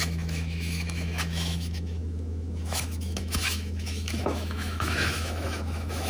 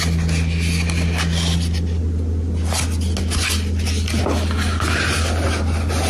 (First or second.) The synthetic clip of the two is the first